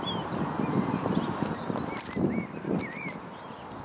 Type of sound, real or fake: real